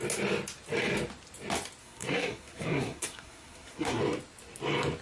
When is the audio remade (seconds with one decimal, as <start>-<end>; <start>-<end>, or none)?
1.8-4.0